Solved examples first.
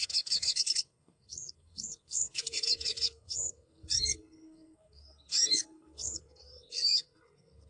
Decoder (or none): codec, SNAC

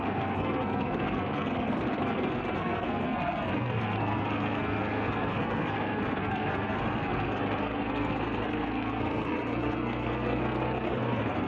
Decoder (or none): codec, SNAC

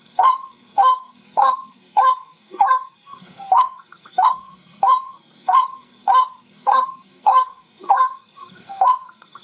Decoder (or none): codec, SNAC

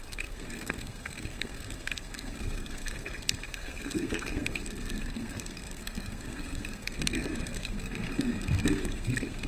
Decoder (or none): codec, SNAC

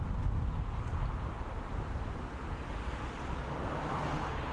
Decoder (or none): none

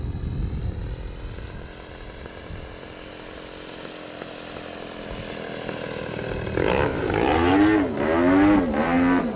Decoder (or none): none